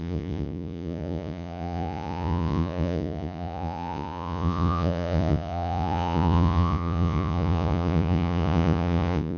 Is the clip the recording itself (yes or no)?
no